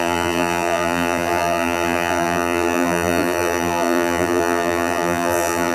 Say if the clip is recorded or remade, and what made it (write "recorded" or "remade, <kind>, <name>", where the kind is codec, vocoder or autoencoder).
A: remade, vocoder, BigVGAN v2